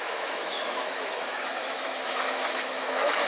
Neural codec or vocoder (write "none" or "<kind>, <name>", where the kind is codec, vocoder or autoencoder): autoencoder, DAC-VAE